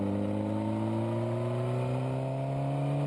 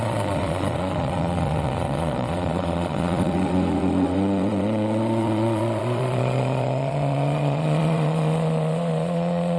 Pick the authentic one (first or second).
first